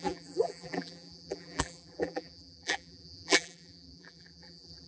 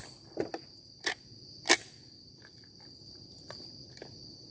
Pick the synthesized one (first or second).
first